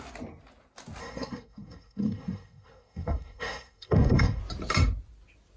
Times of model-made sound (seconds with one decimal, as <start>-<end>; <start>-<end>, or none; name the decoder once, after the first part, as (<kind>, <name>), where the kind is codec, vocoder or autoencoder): 1.0-4.4 (codec, SNAC)